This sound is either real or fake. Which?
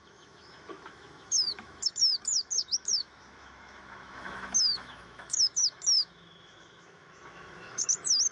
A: fake